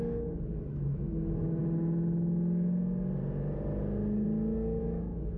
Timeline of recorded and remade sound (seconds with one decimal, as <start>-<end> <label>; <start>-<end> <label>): 0.0-1.6 remade; 1.6-4.8 recorded; 4.8-5.4 remade